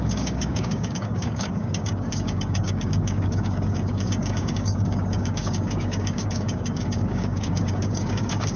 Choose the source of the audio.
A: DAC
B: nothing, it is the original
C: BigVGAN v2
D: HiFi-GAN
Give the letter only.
A